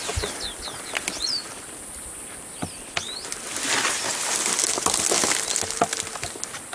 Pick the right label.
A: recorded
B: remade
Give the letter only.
A